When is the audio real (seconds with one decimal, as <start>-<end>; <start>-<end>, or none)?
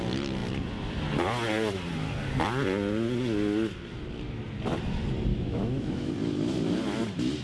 0.0-5.3; 6.1-7.4